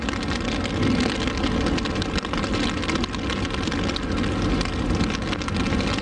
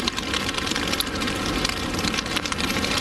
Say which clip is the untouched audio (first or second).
first